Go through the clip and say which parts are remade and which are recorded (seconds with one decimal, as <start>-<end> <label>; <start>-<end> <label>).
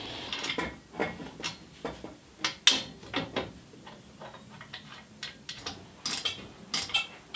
0.0-7.4 recorded